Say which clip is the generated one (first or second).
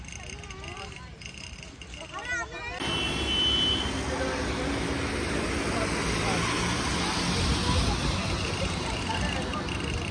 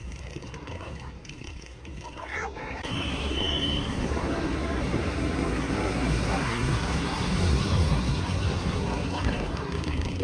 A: second